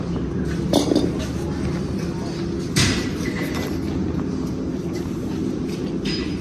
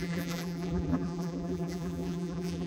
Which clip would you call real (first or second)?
first